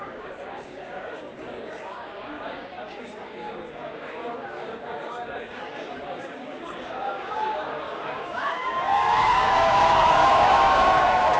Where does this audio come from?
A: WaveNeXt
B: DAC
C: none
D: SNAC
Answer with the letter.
B